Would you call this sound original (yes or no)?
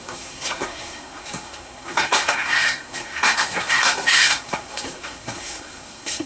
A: no